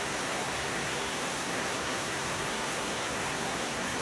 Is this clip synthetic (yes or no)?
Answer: yes